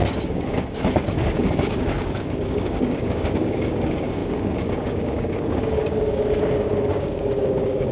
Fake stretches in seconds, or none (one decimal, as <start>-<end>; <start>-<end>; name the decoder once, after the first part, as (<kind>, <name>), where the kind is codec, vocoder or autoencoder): 0.0-7.9 (codec, DAC)